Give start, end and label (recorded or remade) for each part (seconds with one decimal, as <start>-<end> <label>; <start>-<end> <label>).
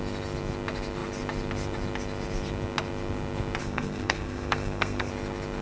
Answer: 0.0-3.6 recorded; 3.6-5.1 remade; 5.1-5.6 recorded